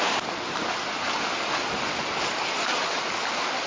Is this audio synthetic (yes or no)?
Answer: no